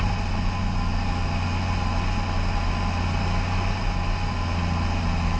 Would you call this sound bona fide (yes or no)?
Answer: yes